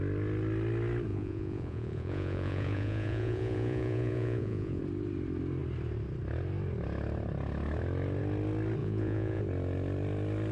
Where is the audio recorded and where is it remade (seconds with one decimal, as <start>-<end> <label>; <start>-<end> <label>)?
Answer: 0.0-1.1 recorded; 1.1-4.8 remade; 4.8-8.8 recorded; 8.8-9.4 remade; 9.4-10.5 recorded